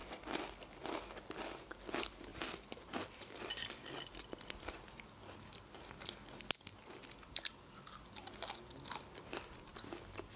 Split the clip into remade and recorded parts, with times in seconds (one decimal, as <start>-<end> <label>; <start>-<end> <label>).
0.0-0.6 remade; 0.6-2.3 recorded; 2.3-3.4 remade; 3.4-6.7 recorded; 6.7-7.5 remade; 7.5-10.4 recorded